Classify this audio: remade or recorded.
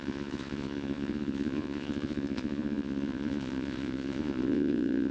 remade